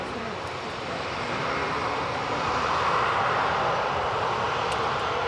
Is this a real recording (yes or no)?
no